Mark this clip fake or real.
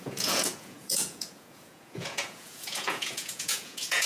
fake